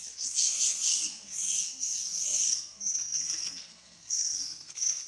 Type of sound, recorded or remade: remade